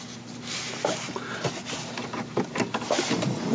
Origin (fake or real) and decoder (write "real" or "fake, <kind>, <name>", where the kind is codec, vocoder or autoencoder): real